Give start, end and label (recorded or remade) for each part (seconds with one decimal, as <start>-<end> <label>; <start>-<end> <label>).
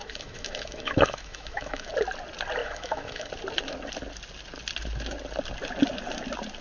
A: 0.0-1.9 remade; 1.9-2.6 recorded; 2.6-3.3 remade; 3.3-6.6 recorded